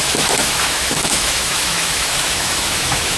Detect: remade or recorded remade